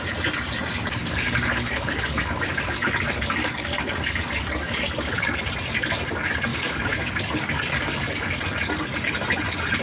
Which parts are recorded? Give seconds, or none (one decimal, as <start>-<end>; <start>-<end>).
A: 0.0-1.0; 5.4-6.5; 8.4-9.8